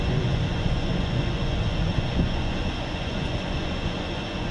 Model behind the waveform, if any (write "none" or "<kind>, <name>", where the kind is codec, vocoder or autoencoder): vocoder, Vocos